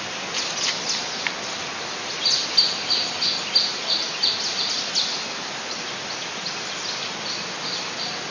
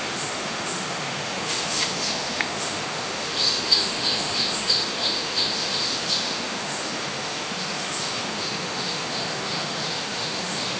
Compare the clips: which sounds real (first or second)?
first